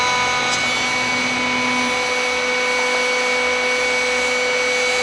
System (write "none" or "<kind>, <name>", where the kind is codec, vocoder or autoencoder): none